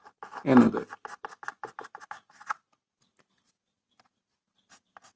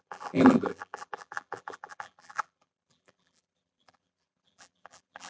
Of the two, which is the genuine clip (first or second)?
first